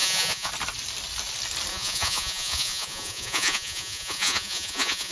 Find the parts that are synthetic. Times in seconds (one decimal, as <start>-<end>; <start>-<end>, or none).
0.0-0.5; 1.7-5.1

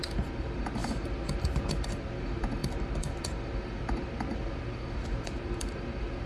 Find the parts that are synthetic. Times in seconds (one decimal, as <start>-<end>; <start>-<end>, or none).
0.0-6.3

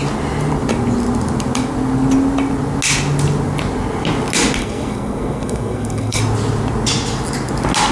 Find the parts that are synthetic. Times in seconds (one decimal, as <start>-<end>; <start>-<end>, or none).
4.6-6.2

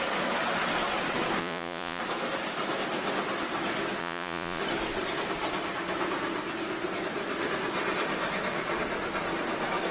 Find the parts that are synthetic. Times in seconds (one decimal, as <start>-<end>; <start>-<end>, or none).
1.4-2.0; 4.0-4.6

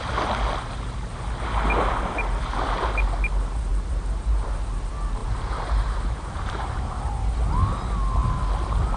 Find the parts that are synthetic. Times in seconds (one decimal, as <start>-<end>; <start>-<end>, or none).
3.7-4.5; 5.2-7.0